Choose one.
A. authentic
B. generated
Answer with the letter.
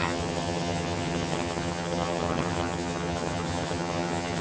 B